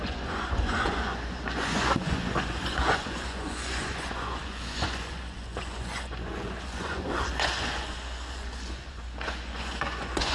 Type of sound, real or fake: fake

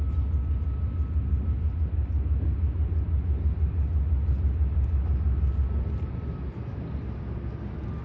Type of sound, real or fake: real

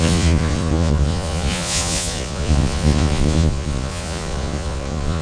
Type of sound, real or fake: fake